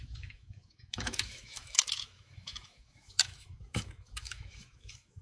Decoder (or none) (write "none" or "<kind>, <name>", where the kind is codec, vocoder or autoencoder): autoencoder, DAC-VAE